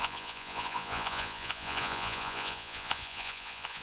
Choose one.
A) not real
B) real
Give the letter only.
A